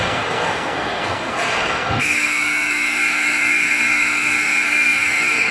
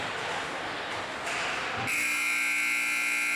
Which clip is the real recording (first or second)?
second